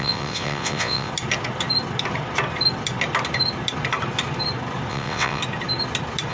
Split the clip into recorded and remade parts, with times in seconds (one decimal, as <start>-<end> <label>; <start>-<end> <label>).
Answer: 0.0-1.1 remade; 1.1-4.9 recorded; 4.9-5.4 remade; 5.4-6.3 recorded